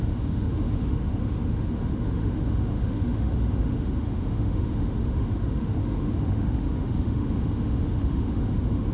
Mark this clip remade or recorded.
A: remade